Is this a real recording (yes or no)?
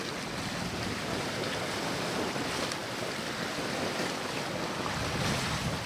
yes